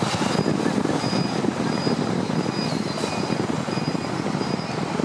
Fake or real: real